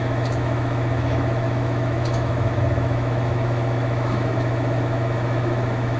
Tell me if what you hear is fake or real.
fake